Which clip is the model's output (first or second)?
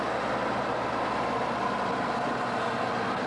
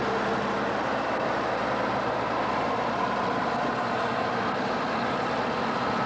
second